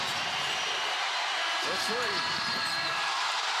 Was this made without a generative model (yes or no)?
no